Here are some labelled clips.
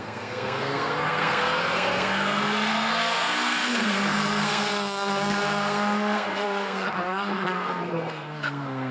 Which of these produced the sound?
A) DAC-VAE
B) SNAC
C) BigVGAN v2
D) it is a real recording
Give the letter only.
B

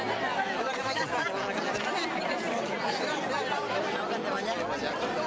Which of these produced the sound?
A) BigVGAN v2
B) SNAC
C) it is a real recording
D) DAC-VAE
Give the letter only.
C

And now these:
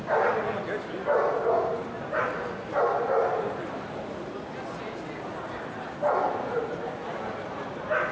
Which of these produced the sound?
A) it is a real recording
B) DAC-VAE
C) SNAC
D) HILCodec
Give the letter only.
A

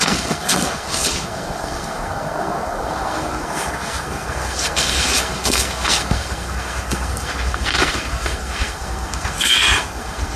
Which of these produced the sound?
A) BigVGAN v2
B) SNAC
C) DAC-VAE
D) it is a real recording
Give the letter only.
B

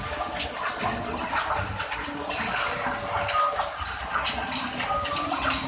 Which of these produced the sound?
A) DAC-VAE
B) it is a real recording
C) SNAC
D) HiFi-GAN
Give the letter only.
B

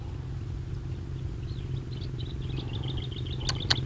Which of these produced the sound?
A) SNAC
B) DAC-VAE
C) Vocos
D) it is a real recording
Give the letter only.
D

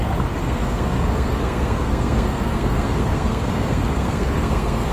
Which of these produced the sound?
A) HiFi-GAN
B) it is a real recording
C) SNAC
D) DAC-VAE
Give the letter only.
C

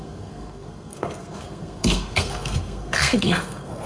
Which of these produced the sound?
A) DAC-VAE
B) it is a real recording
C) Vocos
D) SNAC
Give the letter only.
D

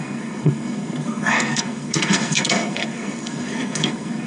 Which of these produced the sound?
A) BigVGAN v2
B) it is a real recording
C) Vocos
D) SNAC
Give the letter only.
D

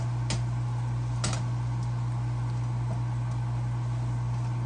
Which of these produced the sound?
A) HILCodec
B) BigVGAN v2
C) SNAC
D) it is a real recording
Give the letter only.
D